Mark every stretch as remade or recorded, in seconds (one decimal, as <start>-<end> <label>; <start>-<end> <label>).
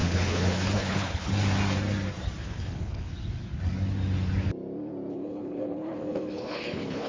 0.0-1.3 remade; 1.3-2.4 recorded; 2.4-3.1 remade; 3.1-5.1 recorded; 5.1-7.1 remade